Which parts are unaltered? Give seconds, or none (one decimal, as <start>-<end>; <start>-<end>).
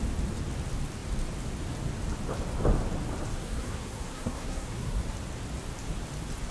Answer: 0.0-3.3; 5.0-6.5